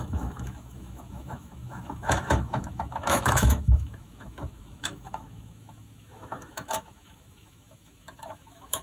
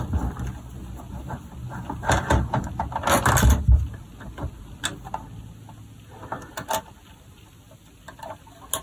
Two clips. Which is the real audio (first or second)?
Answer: second